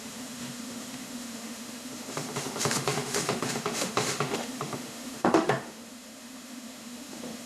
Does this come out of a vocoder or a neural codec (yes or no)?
yes